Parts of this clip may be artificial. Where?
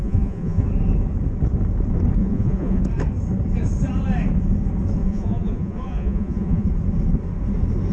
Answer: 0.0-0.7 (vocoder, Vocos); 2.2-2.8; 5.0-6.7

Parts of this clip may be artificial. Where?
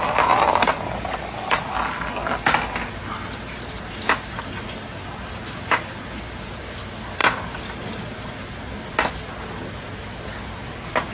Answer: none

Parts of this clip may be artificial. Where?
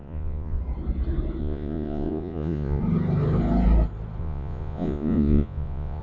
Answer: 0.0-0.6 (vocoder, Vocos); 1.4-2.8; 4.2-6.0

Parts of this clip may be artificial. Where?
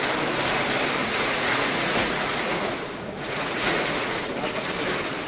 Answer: 1.0-4.2 (vocoder, Vocos)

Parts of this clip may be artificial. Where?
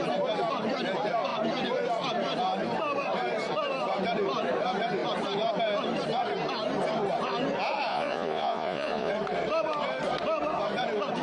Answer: 7.9-9.1 (vocoder, Vocos)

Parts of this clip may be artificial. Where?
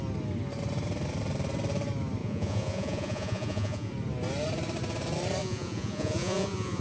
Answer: 2.2-3.9 (vocoder, Vocos); 5.4-6.8